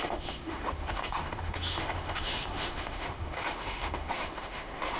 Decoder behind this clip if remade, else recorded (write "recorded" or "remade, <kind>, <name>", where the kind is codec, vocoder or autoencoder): remade, autoencoder, DAC-VAE